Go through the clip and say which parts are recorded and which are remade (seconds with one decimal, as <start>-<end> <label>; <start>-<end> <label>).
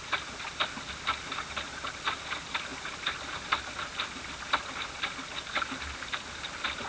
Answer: 0.0-6.9 recorded